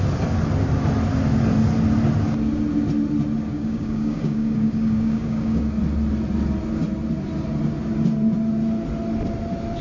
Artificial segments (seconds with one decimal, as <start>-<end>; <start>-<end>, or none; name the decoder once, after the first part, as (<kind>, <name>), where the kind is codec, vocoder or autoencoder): 3.5-5.6 (codec, DAC)